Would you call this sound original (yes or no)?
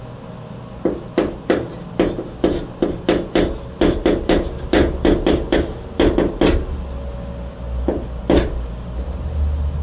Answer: yes